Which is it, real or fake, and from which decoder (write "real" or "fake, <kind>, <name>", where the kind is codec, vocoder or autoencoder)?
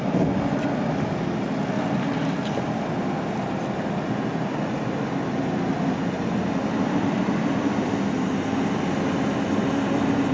real